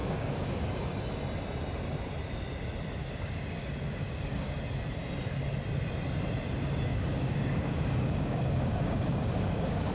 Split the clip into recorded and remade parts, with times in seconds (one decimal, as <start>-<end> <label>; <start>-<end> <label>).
0.0-0.7 remade; 0.7-3.0 recorded; 3.0-4.6 remade; 4.6-6.9 recorded; 6.9-9.9 remade